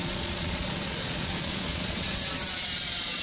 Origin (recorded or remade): remade